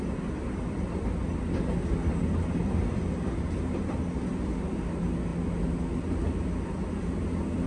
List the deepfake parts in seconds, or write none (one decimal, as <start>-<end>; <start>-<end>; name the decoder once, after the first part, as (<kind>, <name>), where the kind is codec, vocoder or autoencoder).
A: none